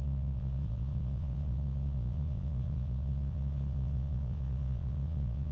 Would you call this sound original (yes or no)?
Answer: no